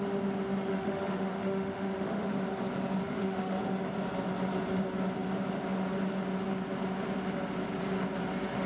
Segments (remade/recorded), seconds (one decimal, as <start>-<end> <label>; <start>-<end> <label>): 0.0-0.7 recorded; 0.7-2.3 remade; 2.3-3.0 recorded; 3.0-3.6 remade; 3.6-8.7 recorded